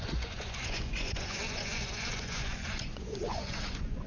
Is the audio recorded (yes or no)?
no